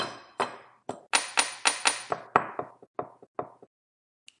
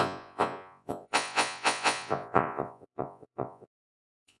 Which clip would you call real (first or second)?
first